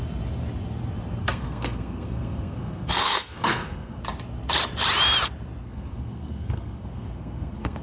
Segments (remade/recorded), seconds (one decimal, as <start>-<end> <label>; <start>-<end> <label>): 0.0-1.2 recorded; 1.2-4.0 remade; 4.0-5.6 recorded; 5.6-7.8 remade